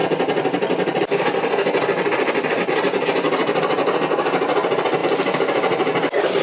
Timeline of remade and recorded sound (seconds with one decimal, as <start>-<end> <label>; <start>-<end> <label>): 0.0-6.4 recorded